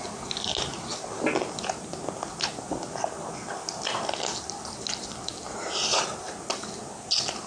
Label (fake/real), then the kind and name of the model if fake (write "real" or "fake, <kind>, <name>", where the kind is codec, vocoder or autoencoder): real